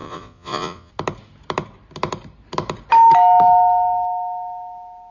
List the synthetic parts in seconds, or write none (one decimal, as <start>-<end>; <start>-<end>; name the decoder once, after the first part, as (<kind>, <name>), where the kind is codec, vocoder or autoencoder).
0.0-0.9 (vocoder, Vocos)